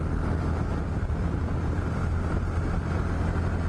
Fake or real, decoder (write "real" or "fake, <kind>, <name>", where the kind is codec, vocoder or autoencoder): real